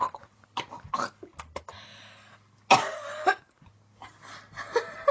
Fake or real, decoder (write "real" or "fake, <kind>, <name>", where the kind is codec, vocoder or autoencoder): real